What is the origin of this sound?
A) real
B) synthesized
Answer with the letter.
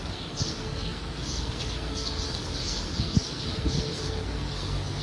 B